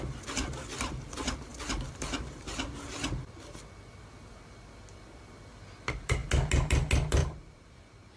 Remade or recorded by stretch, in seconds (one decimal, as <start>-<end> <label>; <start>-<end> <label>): 0.0-7.2 recorded; 7.2-8.2 remade